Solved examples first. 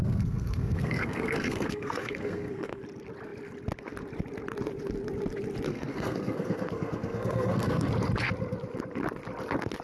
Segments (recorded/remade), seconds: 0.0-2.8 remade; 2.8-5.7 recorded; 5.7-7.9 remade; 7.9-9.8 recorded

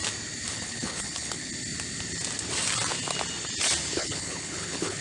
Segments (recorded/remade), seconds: 0.0-0.5 recorded; 0.5-1.5 remade; 1.5-3.9 recorded; 3.9-5.0 remade

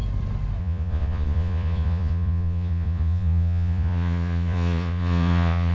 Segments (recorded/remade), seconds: 0.0-0.6 recorded; 0.6-5.7 remade

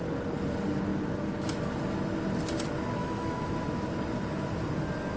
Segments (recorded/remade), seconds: 0.0-3.0 recorded; 3.0-3.5 remade; 3.5-5.2 recorded